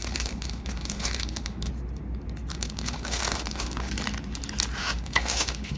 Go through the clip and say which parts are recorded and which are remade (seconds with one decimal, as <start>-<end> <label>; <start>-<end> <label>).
0.0-1.7 remade; 1.7-2.5 recorded; 2.5-3.9 remade; 3.9-4.8 recorded; 4.8-5.8 remade